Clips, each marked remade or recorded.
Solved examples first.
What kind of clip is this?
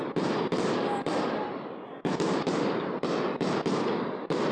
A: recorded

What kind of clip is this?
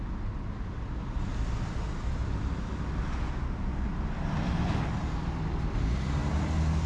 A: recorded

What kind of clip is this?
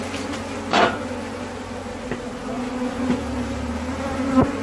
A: recorded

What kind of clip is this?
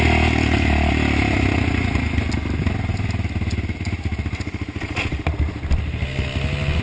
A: recorded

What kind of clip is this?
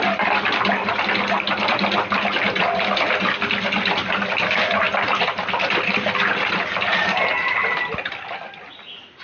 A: recorded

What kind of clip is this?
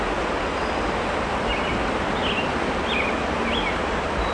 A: recorded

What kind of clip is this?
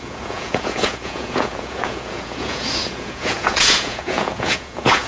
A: remade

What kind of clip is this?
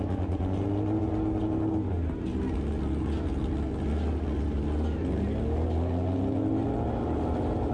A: recorded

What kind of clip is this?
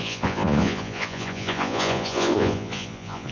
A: remade